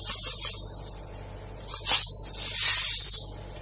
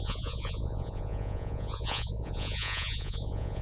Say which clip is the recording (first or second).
first